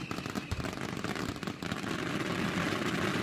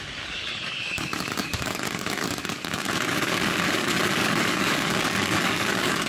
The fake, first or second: second